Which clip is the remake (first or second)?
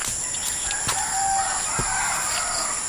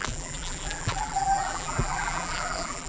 second